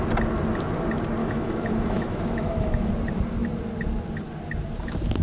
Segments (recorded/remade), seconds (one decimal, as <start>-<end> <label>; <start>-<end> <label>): 0.0-1.2 recorded; 1.2-2.9 remade; 2.9-5.2 recorded